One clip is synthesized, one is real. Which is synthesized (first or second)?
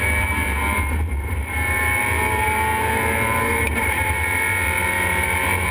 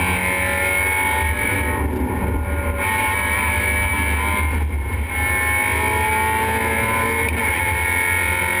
first